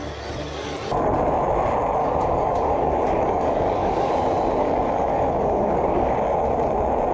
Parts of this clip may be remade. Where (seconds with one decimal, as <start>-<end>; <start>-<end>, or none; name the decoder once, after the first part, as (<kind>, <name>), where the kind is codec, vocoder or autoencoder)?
2.0-4.1 (codec, DAC); 4.6-6.1